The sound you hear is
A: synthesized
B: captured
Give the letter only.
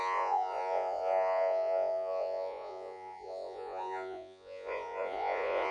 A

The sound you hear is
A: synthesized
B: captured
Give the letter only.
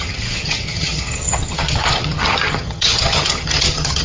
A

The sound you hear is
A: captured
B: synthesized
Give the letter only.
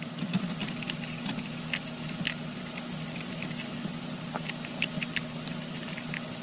A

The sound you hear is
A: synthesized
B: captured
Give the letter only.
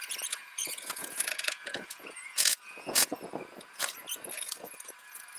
A